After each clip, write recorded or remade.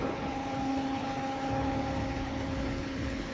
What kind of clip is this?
remade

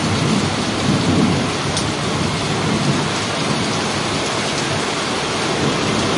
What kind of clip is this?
recorded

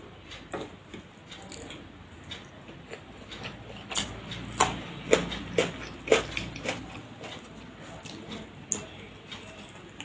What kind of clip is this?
recorded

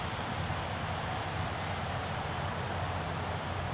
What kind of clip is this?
recorded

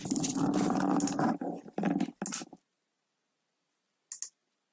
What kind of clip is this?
recorded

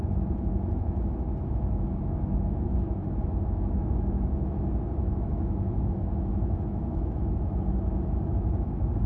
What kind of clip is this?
remade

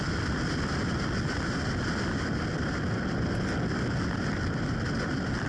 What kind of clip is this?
recorded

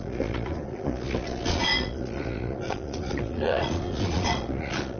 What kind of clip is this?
remade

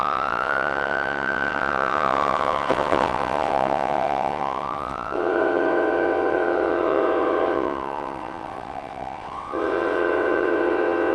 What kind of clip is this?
remade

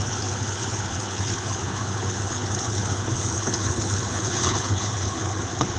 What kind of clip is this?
remade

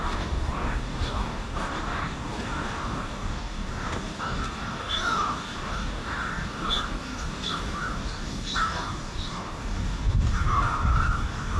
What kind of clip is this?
remade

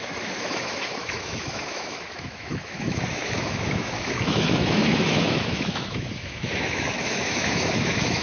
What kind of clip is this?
remade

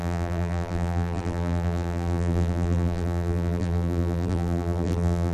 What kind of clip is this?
remade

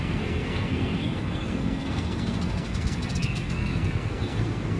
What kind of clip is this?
remade